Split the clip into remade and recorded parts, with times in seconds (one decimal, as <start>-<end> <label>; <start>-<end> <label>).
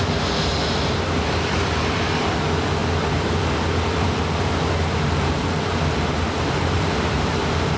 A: 0.0-0.5 recorded; 0.5-2.3 remade; 2.3-2.8 recorded; 2.8-7.8 remade